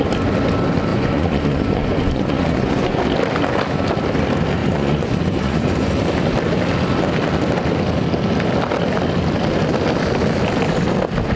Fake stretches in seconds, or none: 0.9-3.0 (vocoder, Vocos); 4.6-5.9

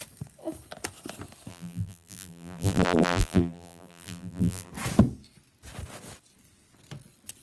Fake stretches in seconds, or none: 1.5-4.7 (vocoder, BigVGAN v2)

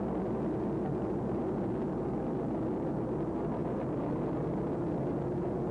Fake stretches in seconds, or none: none

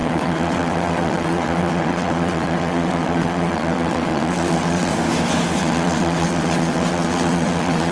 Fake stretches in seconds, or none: 0.0-4.9 (vocoder, WaveNeXt); 5.6-7.9